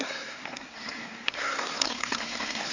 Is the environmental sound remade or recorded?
remade